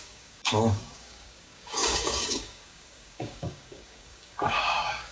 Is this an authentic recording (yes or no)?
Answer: no